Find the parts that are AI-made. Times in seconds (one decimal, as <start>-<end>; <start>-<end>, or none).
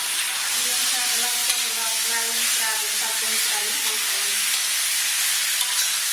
none